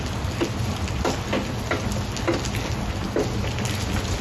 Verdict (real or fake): real